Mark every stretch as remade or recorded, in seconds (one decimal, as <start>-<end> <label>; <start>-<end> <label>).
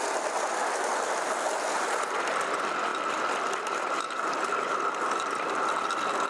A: 0.0-6.3 recorded